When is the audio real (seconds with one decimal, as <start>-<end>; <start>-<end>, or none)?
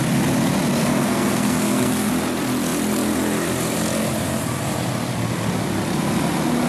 0.0-0.8; 2.1-6.7